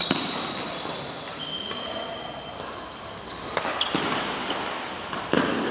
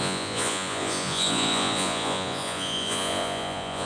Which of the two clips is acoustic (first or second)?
first